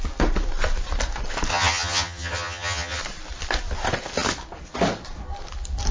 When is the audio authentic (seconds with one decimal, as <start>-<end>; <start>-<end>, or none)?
0.0-1.5; 3.0-5.9